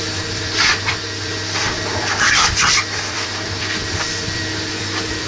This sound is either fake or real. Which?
fake